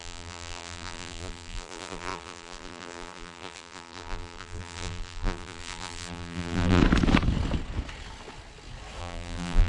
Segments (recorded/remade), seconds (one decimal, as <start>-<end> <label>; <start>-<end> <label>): 0.0-6.8 remade; 6.8-9.0 recorded; 9.0-9.7 remade